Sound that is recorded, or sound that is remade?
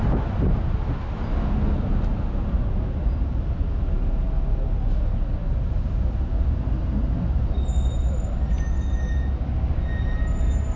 recorded